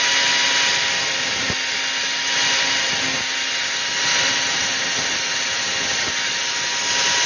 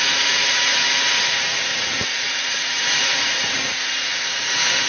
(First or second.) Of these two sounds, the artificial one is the second